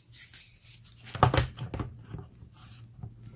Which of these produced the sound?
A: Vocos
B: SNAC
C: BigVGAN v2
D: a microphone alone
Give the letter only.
D